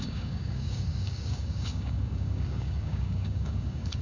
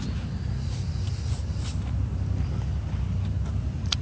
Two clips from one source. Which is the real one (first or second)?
second